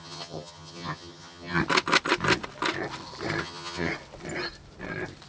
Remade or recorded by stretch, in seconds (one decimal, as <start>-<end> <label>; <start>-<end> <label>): 0.0-1.6 remade; 1.6-3.4 recorded; 3.4-3.9 remade; 3.9-5.3 recorded

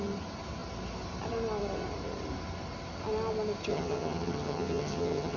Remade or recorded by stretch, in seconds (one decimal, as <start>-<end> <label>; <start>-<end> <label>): 0.0-3.7 recorded; 3.7-5.4 remade

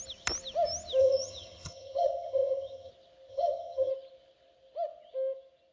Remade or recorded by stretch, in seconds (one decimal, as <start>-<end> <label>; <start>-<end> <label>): 0.0-1.0 recorded; 1.0-2.9 remade; 2.9-3.3 recorded; 3.3-3.9 remade; 3.9-5.7 recorded

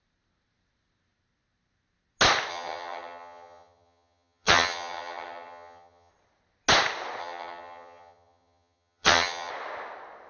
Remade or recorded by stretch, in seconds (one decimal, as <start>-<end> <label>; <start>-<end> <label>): 0.0-2.5 recorded; 2.5-6.1 remade; 6.1-7.2 recorded; 7.2-9.5 remade; 9.5-10.3 recorded

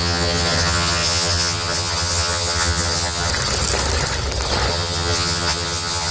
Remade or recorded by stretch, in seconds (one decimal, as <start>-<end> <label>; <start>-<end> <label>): 0.0-3.3 remade; 3.3-4.7 recorded; 4.7-6.1 remade

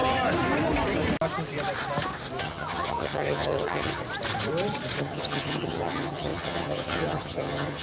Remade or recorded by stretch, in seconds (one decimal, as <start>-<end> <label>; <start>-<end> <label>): 0.0-2.4 recorded; 2.4-4.0 remade; 4.0-5.0 recorded; 5.0-7.8 remade

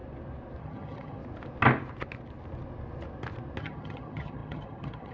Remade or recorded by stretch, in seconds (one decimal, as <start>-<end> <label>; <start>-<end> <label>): 0.0-0.6 recorded; 0.6-1.2 remade; 1.2-3.6 recorded; 3.6-5.1 remade

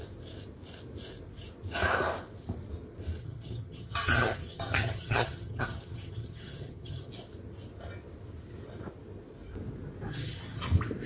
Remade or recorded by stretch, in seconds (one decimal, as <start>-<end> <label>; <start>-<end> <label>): 0.0-3.2 recorded; 3.2-7.1 remade; 7.1-10.1 recorded; 10.1-10.6 remade; 10.6-11.1 recorded